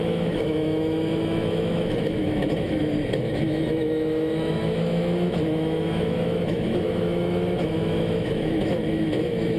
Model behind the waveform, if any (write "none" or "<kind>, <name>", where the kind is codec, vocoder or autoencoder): autoencoder, DAC-VAE